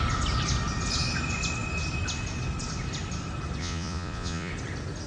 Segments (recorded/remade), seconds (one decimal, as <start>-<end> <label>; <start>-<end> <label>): 0.0-3.6 recorded; 3.6-4.5 remade; 4.5-5.1 recorded